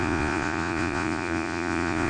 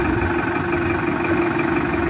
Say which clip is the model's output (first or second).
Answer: first